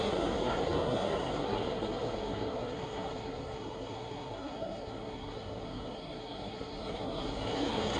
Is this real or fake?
fake